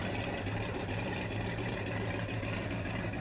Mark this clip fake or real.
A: fake